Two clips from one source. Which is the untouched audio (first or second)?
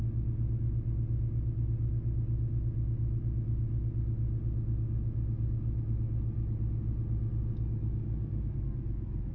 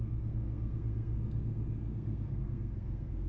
first